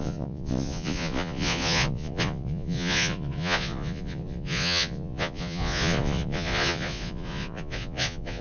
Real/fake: fake